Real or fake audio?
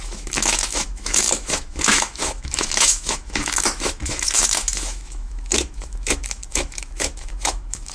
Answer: fake